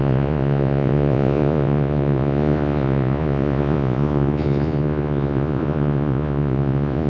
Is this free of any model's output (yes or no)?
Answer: no